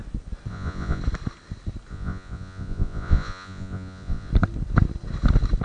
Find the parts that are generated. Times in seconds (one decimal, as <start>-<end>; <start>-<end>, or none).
0.5-1.0; 1.9-4.3